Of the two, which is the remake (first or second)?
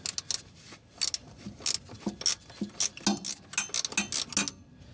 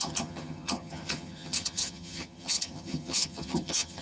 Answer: second